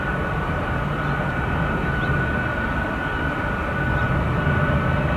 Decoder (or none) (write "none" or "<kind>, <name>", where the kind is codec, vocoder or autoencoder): none